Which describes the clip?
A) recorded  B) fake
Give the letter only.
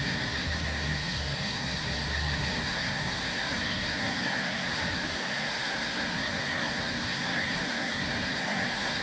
B